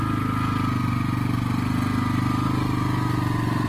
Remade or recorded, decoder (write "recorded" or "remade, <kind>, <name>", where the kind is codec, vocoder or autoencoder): recorded